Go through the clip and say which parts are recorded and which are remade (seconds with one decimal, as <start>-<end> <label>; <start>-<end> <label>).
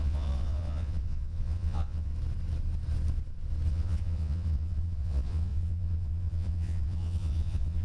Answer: 0.0-2.1 remade; 2.1-3.7 recorded; 3.7-7.8 remade